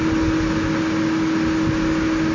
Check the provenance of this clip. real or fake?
real